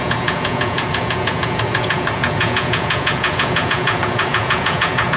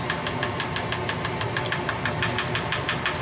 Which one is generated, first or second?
first